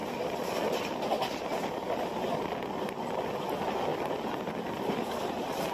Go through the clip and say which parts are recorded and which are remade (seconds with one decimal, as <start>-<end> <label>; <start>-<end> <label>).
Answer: 0.0-3.9 recorded; 3.9-4.5 remade; 4.5-5.7 recorded